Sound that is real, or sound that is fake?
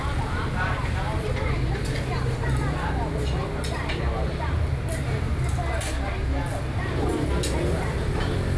real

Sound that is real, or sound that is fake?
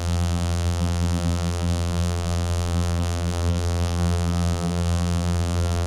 fake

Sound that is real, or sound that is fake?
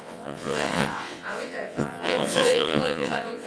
fake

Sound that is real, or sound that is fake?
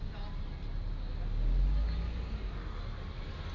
real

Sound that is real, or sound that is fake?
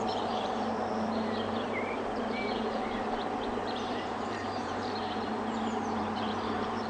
fake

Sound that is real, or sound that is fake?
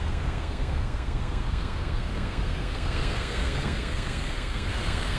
fake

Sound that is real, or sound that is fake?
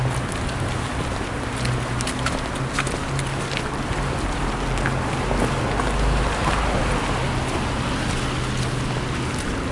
real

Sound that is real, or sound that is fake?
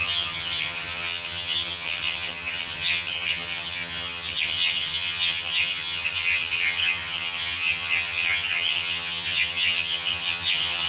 fake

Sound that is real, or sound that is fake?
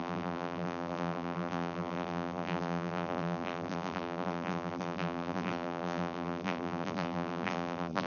fake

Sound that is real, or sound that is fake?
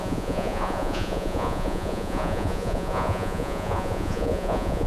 fake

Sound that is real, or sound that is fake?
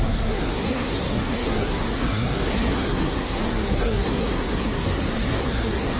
fake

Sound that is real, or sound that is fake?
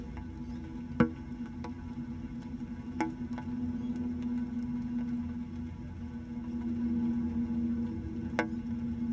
real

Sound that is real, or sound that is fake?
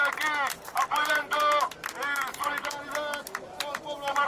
real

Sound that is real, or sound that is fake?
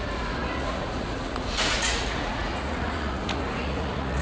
fake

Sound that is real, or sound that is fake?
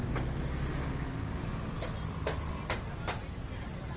real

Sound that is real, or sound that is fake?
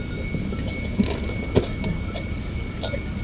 real